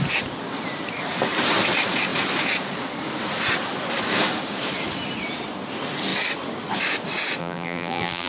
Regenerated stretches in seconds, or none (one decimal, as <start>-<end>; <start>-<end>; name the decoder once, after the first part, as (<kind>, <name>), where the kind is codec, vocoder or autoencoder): 7.4-8.3 (vocoder, BigVGAN v2)